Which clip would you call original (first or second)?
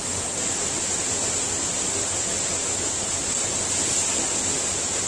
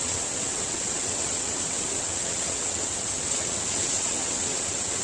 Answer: first